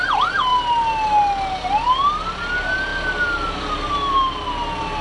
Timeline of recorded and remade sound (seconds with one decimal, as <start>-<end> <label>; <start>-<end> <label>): 0.0-5.0 recorded